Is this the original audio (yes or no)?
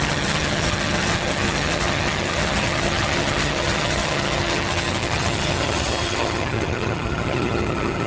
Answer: no